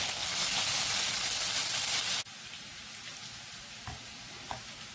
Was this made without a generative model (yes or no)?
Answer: yes